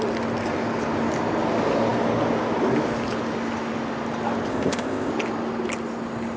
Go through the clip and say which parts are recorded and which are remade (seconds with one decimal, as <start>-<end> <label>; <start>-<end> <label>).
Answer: 0.0-4.5 recorded; 4.5-5.1 remade; 5.1-6.4 recorded